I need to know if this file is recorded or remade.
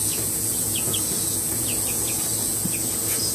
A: remade